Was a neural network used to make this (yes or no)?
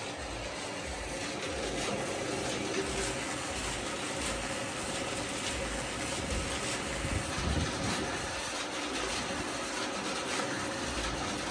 no